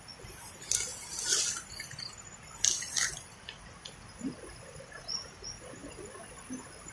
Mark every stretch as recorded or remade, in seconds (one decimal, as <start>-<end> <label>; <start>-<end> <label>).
0.0-6.9 recorded

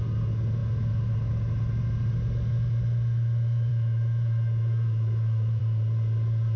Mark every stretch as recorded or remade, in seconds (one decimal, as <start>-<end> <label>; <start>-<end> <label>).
0.0-3.7 recorded; 3.7-5.6 remade; 5.6-6.6 recorded